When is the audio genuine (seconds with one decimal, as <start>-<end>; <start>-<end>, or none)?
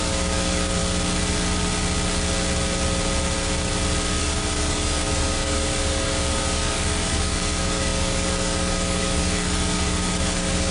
0.8-4.2